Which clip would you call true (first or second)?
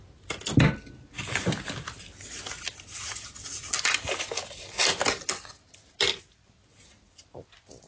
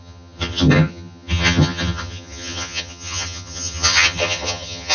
first